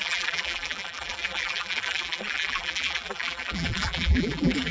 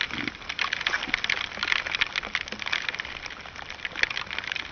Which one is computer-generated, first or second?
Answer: first